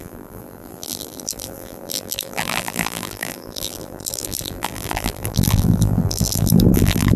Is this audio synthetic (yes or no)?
yes